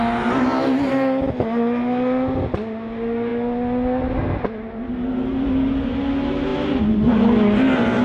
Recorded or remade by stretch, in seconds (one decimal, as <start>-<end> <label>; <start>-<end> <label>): 0.0-8.0 recorded